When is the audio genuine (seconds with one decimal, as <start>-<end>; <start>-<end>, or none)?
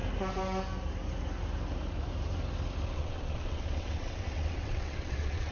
0.0-2.9